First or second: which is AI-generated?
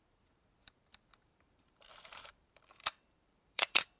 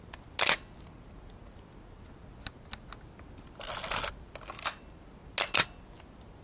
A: first